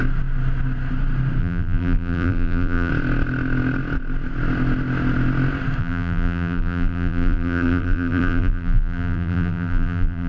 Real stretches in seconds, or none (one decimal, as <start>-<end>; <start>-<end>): 0.0-1.4; 2.9-5.8